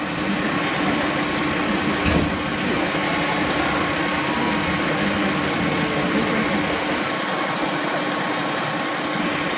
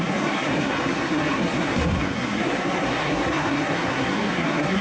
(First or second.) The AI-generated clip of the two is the second